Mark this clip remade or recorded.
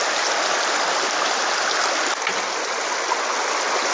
recorded